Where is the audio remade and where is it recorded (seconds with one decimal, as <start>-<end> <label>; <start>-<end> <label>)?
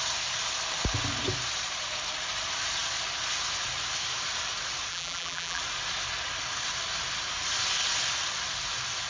0.0-4.9 recorded; 4.9-5.6 remade; 5.6-9.1 recorded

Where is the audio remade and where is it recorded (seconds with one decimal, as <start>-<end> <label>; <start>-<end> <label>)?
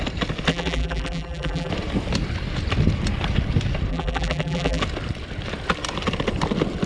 0.0-0.5 recorded; 0.5-1.7 remade; 1.7-3.9 recorded; 3.9-4.8 remade; 4.8-6.9 recorded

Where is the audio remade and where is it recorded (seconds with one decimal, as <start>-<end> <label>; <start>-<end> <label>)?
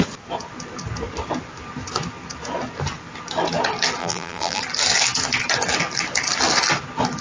0.0-4.0 recorded; 4.0-4.6 remade; 4.6-7.2 recorded